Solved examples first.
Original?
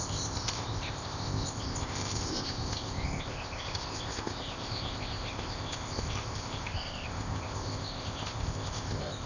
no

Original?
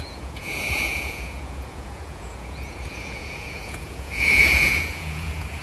no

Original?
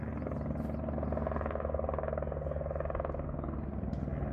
yes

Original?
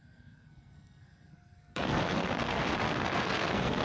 no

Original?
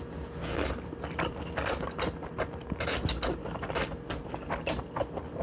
yes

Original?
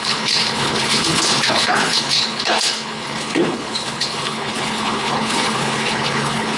no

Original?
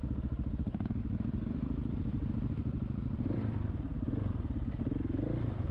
no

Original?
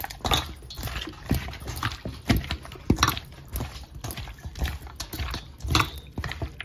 yes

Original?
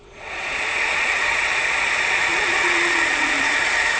no